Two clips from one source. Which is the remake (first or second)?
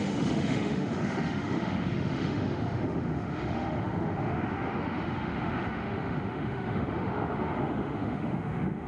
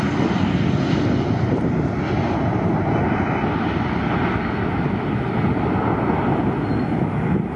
first